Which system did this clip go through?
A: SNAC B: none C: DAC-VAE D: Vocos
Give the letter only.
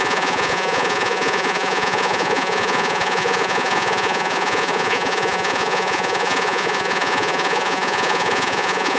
D